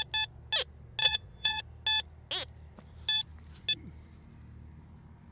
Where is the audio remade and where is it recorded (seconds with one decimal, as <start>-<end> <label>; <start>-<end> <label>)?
0.0-1.0 recorded; 1.0-1.6 remade; 1.6-5.3 recorded